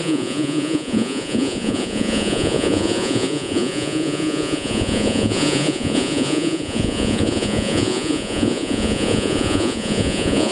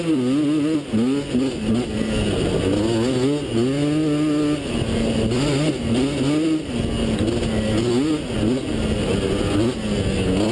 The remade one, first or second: first